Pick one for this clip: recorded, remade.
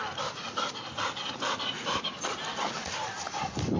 recorded